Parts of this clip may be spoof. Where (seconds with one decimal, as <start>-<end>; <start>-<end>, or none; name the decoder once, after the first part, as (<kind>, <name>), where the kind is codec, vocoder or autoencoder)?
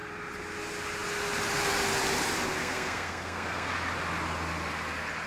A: 2.6-3.7 (codec, SNAC)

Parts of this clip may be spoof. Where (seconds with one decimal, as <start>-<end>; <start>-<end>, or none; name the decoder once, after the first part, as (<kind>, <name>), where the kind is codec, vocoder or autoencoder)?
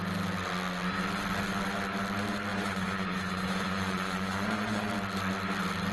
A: 2.5-4.9 (vocoder, Vocos)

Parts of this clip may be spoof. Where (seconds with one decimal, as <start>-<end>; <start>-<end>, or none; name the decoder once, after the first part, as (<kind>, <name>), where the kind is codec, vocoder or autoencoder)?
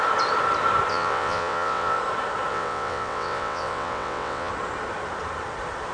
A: 0.9-2.0 (vocoder, WaveNeXt); 2.5-4.5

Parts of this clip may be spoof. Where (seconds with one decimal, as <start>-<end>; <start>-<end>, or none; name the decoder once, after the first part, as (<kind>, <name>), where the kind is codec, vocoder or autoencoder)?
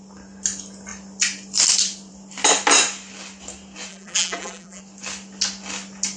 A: 3.9-4.8 (vocoder, BigVGAN v2)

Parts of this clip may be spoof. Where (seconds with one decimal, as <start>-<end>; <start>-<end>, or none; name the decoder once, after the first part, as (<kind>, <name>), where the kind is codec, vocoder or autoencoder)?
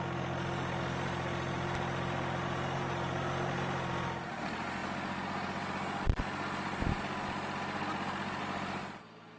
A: none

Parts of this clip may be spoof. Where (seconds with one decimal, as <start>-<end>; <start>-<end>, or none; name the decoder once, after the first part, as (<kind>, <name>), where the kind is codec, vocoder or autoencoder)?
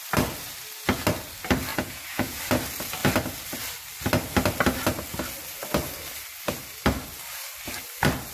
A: 1.7-2.4 (vocoder, Vocos)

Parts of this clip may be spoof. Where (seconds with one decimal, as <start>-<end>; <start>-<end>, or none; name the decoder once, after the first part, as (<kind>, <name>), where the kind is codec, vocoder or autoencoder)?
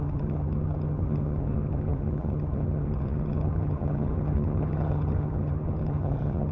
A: 0.0-6.5 (vocoder, HiFi-GAN)